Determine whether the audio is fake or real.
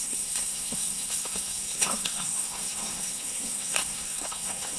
fake